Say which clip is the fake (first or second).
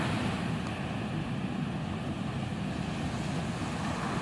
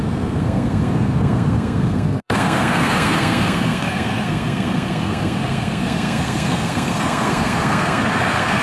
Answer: second